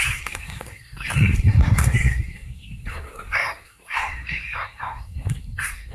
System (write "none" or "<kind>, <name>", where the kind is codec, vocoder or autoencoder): codec, SNAC